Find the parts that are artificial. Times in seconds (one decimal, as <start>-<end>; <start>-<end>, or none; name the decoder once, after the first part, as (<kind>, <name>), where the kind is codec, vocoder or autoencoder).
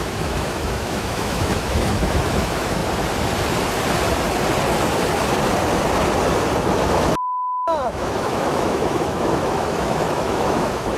0.0-2.8 (autoencoder, DAC-VAE); 6.9-11.0